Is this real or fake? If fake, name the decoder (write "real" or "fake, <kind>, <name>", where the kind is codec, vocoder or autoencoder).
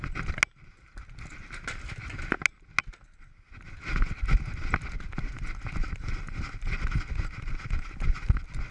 real